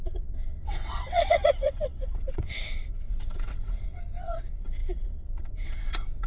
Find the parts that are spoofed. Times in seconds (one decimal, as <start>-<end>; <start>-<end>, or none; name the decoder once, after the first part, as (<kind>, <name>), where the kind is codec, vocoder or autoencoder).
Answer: 0.0-6.3 (vocoder, WaveNeXt)